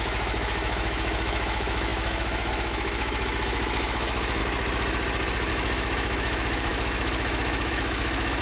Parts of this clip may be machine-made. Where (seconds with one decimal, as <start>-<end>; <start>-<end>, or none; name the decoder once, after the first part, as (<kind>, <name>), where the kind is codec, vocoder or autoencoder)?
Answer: 0.0-4.4 (autoencoder, DAC-VAE); 5.5-8.4